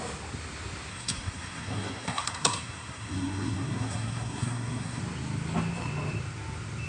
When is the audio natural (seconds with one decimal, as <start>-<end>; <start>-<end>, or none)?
0.0-0.9; 5.0-6.9